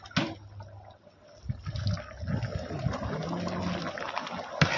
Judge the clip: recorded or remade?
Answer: recorded